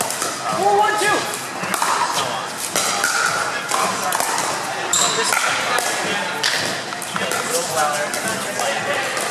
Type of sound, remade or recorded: recorded